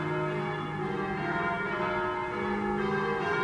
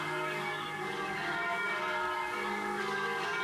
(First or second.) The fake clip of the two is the second